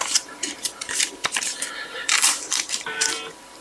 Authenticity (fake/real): fake